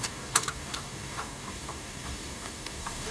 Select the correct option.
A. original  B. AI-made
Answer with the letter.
B